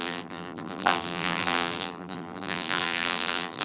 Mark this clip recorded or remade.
remade